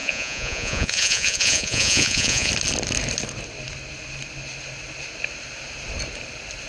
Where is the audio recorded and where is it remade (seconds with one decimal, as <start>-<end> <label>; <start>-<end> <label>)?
0.0-2.5 remade; 2.5-6.7 recorded